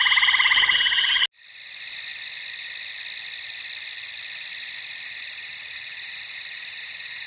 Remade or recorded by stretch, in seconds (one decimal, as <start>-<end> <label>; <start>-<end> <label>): 0.0-7.3 recorded